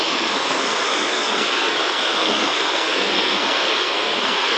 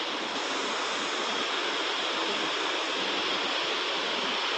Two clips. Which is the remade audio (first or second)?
first